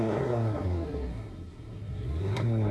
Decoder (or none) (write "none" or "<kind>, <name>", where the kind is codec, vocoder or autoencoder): codec, SNAC